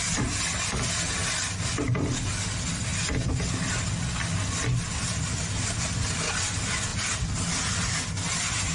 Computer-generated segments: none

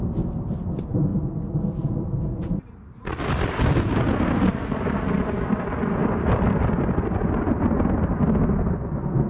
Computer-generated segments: none

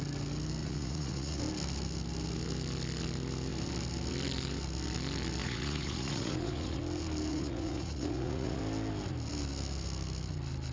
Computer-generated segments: 0.6-1.4 (vocoder, Vocos); 5.4-6.8; 7.3-8.6

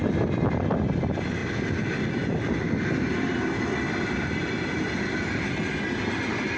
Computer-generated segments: none

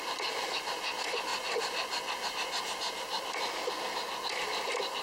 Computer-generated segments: none

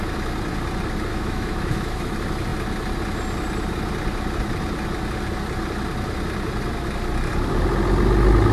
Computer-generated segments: 1.1-2.1 (autoencoder, DAC-VAE)